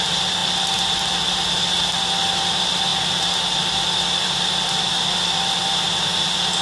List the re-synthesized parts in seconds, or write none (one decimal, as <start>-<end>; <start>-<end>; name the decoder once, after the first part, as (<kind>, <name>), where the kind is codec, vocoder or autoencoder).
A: 0.0-0.4 (vocoder, BigVGAN v2); 1.3-6.6